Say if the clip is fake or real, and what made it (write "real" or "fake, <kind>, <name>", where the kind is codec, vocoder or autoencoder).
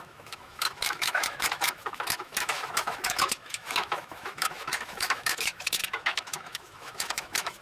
fake, autoencoder, DAC-VAE